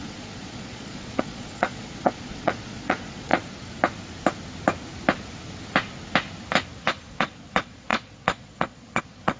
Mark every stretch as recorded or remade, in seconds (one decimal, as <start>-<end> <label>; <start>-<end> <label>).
0.0-3.3 remade; 3.3-7.1 recorded; 7.1-9.4 remade

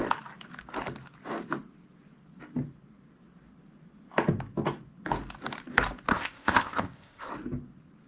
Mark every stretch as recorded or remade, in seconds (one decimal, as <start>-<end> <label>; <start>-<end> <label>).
0.0-6.1 recorded; 6.1-7.3 remade; 7.3-8.1 recorded